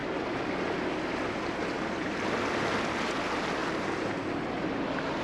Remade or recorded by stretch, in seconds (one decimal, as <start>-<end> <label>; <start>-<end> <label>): 0.0-5.2 recorded

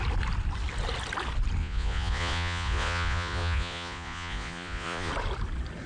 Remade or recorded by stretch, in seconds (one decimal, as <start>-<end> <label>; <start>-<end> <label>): 0.0-1.6 recorded; 1.6-5.1 remade; 5.1-5.9 recorded